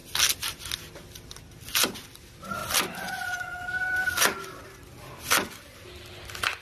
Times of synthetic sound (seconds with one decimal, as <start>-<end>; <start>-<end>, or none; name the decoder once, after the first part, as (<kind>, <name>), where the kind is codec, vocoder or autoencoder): 2.6-6.0 (vocoder, BigVGAN v2)